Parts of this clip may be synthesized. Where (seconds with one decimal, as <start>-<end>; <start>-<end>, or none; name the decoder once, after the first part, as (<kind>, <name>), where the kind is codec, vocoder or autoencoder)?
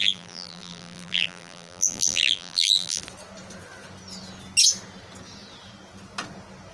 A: 0.0-3.0 (vocoder, BigVGAN v2)